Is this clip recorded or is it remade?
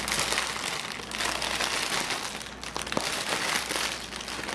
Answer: recorded